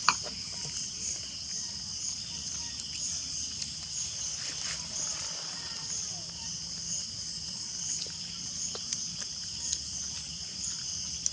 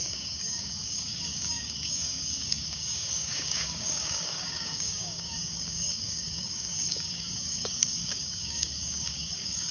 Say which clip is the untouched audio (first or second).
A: first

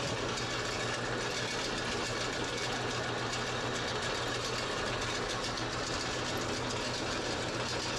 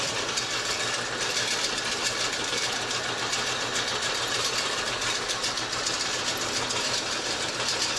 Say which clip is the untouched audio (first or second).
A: first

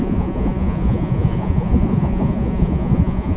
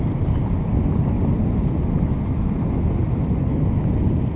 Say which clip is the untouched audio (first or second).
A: second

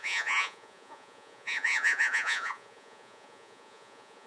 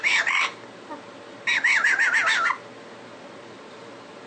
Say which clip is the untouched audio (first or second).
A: second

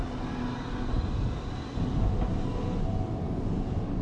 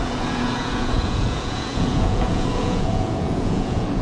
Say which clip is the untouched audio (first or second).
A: first